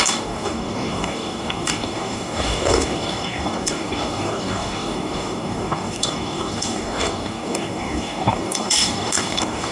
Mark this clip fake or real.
fake